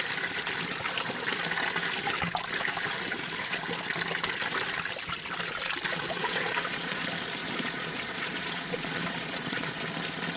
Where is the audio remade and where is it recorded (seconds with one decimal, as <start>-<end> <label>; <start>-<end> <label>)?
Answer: 0.0-5.9 recorded; 5.9-7.0 remade; 7.0-7.4 recorded; 7.4-9.8 remade; 9.8-10.4 recorded

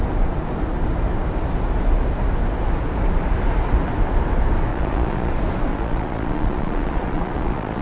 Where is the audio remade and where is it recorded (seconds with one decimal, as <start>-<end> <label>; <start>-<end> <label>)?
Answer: 0.0-4.7 recorded; 4.7-5.3 remade; 5.3-5.7 recorded; 5.7-7.8 remade